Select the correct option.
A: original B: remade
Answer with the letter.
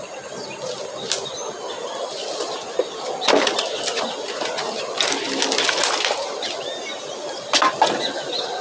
A